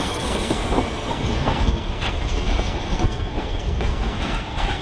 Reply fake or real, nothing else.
fake